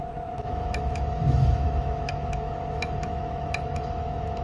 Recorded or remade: remade